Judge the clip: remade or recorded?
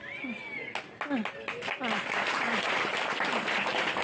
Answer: recorded